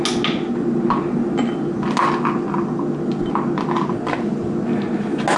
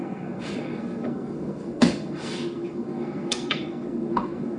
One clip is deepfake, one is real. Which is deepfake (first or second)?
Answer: second